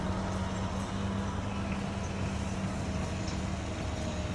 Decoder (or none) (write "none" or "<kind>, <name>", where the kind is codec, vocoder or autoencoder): none